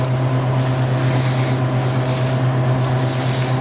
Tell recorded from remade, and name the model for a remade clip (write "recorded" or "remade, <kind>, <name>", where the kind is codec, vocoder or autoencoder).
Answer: recorded